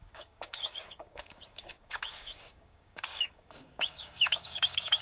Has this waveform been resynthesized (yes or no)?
yes